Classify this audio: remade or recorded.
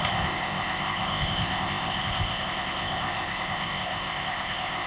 remade